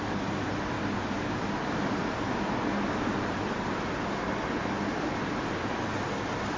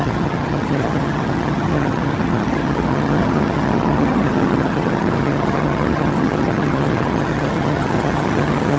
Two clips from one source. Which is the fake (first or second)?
second